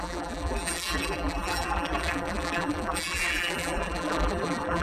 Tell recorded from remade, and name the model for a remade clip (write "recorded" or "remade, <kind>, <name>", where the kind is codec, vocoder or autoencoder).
remade, vocoder, BigVGAN v2